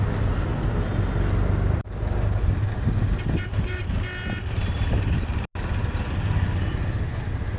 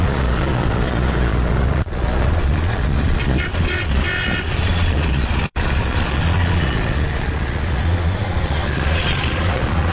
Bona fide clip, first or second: first